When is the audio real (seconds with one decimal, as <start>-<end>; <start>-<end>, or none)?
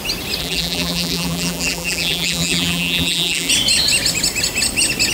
0.0-0.4; 3.5-5.1